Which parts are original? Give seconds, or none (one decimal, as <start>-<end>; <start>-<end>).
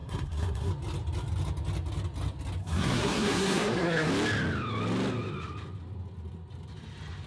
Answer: 0.7-2.6; 4.1-7.3